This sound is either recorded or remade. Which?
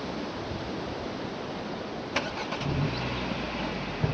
recorded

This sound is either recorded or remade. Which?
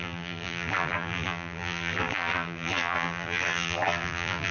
remade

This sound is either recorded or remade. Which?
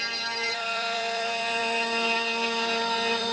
remade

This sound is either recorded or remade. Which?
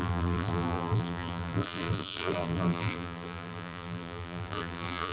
remade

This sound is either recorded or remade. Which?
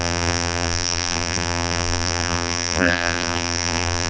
remade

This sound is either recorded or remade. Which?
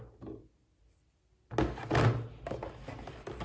recorded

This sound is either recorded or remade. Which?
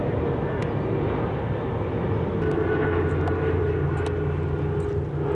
recorded